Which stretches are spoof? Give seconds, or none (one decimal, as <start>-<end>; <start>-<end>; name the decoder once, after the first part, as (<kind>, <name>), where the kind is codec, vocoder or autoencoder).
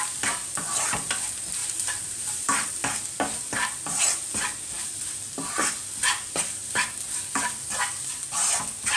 1.6-2.7 (vocoder, BigVGAN v2)